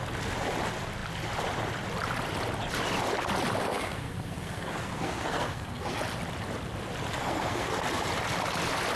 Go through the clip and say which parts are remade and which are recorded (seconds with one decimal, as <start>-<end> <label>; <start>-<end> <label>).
0.0-3.7 recorded; 3.7-6.0 remade; 6.0-7.2 recorded; 7.2-7.7 remade; 7.7-9.0 recorded